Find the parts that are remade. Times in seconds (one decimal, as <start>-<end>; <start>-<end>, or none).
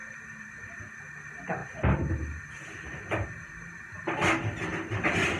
0.0-0.8; 4.7-5.4